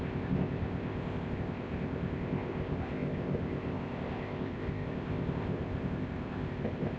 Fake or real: fake